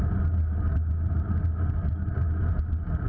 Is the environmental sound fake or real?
real